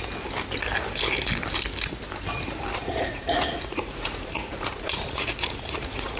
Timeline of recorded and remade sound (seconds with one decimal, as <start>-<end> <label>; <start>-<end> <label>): 0.0-2.8 recorded; 2.8-6.2 remade